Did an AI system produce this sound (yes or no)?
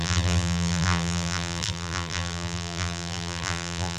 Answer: yes